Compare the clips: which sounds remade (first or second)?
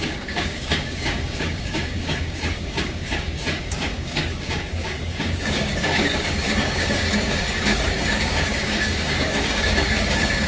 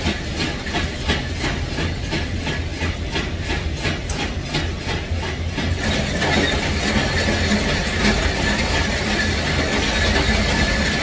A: first